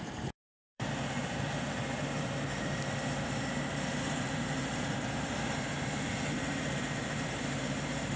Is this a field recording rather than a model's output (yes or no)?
no